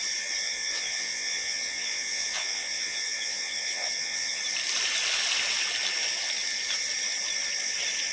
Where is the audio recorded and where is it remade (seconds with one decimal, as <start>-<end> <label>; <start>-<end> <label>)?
0.0-0.4 recorded; 0.4-4.4 remade; 4.4-8.1 recorded